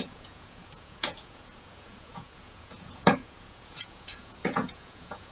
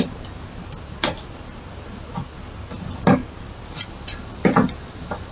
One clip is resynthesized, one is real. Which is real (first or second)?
second